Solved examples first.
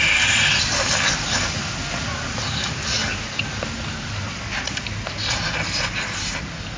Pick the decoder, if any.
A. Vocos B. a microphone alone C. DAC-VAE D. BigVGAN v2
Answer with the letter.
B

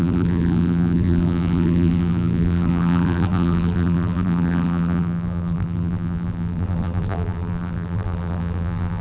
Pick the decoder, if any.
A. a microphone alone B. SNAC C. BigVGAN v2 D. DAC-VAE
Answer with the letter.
C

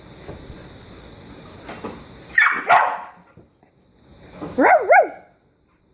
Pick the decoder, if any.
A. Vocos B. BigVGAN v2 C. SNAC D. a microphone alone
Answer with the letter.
D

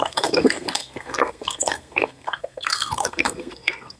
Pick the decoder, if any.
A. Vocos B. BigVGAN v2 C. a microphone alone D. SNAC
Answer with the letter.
D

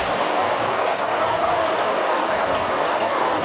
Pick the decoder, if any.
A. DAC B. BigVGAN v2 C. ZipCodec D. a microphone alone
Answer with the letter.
A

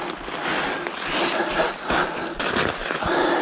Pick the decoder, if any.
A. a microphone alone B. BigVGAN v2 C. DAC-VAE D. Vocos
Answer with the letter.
A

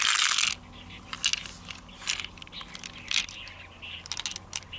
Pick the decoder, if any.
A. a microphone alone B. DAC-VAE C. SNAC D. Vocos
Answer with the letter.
A